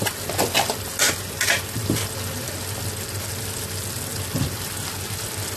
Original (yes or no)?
yes